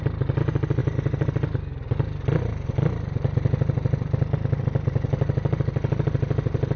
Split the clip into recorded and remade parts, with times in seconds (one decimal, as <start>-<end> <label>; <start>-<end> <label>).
0.0-6.8 recorded